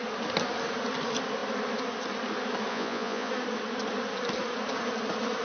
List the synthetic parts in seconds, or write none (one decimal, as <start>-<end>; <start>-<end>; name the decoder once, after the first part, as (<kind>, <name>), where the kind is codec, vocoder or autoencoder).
2.7-3.3 (vocoder, Vocos)